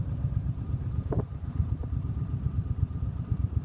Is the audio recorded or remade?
remade